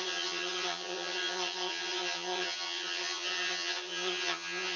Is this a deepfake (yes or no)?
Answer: yes